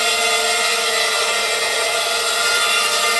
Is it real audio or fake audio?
real